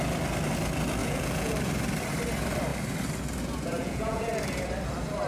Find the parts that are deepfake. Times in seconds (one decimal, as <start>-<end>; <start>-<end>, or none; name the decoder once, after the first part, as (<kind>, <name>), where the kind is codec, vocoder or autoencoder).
1.0-1.5 (vocoder, Vocos); 3.8-4.3